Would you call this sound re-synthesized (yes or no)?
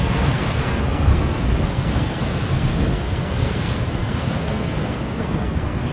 yes